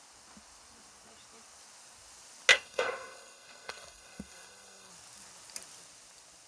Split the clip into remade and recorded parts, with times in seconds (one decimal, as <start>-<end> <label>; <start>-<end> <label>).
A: 0.0-2.5 recorded; 2.5-4.9 remade; 4.9-6.5 recorded